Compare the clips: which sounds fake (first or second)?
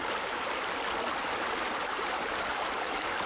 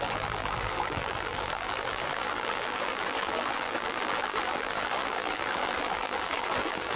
second